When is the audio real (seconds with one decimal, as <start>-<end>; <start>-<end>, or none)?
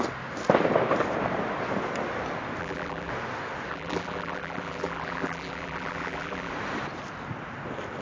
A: 0.0-2.6; 3.1-3.7; 6.5-8.0